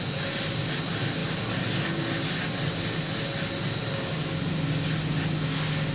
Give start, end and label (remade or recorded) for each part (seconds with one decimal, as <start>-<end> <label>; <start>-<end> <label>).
0.0-5.9 recorded